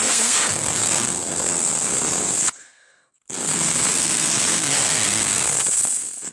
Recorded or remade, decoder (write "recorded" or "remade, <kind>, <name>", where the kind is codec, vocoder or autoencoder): remade, codec, SNAC